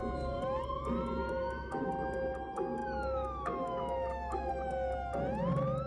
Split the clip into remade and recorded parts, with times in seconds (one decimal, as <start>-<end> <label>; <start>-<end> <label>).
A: 0.0-1.2 recorded; 1.2-1.9 remade; 1.9-2.8 recorded; 2.8-4.5 remade; 4.5-5.9 recorded